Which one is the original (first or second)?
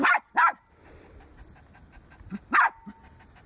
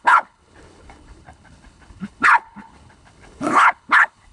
first